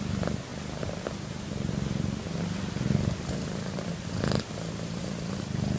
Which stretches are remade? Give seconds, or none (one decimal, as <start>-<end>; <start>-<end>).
none